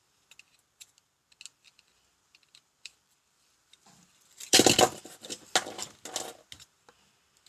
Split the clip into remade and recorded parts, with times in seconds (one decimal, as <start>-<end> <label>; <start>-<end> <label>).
0.0-1.5 recorded; 1.5-5.3 remade; 5.3-7.5 recorded